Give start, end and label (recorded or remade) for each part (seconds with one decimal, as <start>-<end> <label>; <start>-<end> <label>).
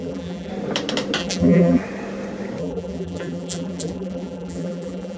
0.0-0.5 remade; 0.5-1.2 recorded; 1.2-1.8 remade; 1.8-2.6 recorded; 2.6-5.2 remade